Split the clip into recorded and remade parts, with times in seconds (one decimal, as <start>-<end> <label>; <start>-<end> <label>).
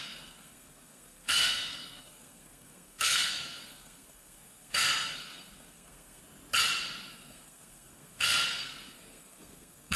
0.0-6.2 remade; 6.2-7.1 recorded; 7.1-10.0 remade